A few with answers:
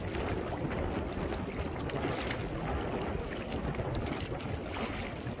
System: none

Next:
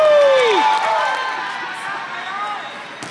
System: none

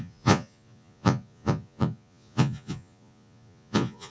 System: vocoder, Vocos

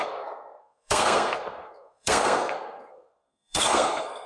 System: codec, SNAC